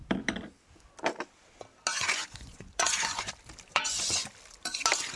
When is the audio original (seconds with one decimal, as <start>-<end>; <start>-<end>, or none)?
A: 0.0-1.9; 3.3-3.7; 4.3-5.2